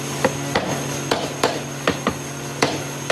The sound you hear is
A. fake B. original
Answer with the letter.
B